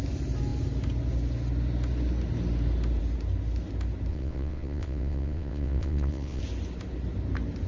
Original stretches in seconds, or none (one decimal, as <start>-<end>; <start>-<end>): 0.0-4.1; 6.4-7.7